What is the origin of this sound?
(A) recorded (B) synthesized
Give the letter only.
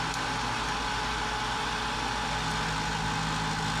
A